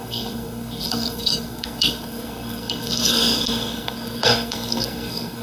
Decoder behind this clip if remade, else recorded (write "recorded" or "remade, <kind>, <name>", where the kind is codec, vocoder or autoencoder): remade, codec, SNAC